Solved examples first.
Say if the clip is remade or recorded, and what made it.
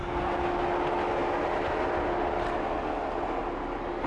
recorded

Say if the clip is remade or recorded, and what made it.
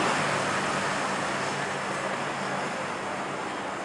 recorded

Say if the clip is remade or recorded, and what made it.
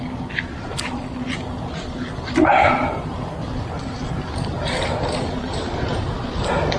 recorded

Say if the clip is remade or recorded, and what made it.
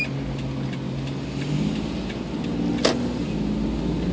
recorded